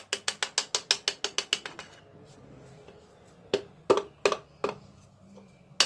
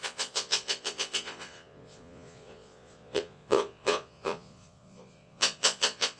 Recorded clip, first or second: first